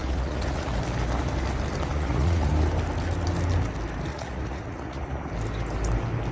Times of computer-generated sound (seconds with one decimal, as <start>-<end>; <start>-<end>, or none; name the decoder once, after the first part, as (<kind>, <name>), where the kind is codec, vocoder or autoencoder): 0.0-0.7 (vocoder, Vocos); 1.9-2.5; 4.1-5.3